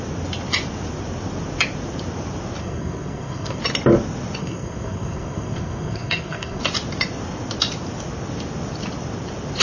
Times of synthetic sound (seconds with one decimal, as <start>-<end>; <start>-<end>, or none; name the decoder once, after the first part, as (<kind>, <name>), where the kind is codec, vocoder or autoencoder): 2.6-3.6 (codec, SNAC); 4.4-6.6